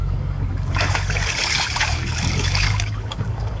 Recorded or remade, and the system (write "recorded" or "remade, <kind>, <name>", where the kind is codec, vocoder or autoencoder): remade, codec, DAC